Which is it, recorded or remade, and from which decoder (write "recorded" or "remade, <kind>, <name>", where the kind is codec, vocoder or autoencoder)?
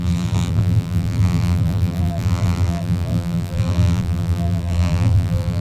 remade, vocoder, BigVGAN v2